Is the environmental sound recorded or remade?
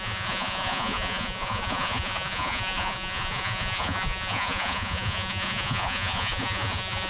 remade